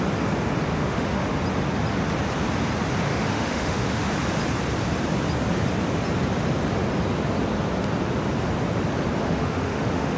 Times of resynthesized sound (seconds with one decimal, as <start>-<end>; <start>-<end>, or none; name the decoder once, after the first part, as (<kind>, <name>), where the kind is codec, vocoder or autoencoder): 0.7-1.3 (autoencoder, DAC-VAE); 3.1-4.1; 9.2-10.2